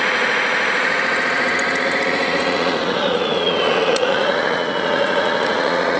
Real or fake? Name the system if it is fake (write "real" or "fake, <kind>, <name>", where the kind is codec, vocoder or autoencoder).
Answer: fake, vocoder, Vocos